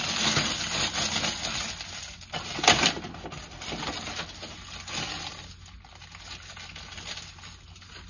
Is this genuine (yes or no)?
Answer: yes